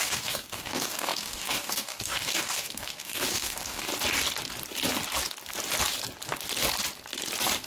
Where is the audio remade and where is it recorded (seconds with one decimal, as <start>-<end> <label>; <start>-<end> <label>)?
0.0-3.9 remade; 3.9-7.7 recorded